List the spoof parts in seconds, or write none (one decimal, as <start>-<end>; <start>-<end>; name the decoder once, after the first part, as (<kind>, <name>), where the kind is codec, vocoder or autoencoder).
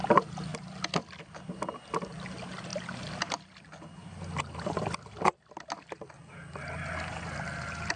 none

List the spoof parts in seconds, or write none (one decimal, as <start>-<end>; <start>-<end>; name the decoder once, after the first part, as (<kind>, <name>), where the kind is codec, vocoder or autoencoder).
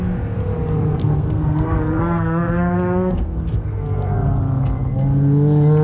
1.0-4.4 (codec, SNAC)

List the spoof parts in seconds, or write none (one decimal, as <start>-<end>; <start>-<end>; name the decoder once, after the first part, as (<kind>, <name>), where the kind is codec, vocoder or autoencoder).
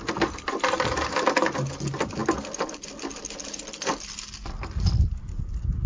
none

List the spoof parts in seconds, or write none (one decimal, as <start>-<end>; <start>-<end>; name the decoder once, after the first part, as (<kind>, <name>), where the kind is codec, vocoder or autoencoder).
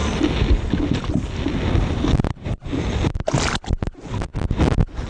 none